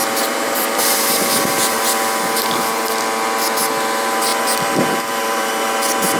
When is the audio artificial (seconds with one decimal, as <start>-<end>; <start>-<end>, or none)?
0.0-1.3; 4.3-5.5